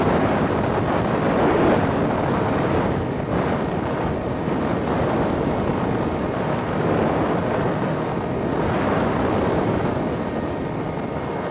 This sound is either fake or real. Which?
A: real